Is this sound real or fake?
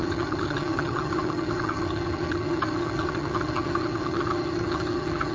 fake